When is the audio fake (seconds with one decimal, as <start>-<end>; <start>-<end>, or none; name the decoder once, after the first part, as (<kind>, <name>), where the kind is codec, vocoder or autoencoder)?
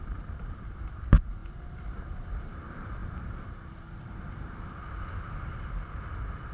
0.0-6.5 (vocoder, BigVGAN v2)